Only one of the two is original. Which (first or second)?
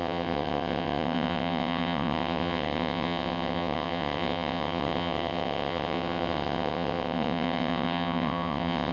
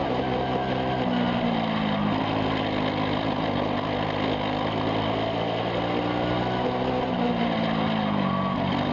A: second